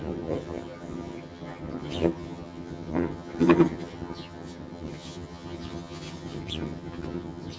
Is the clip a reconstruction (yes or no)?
yes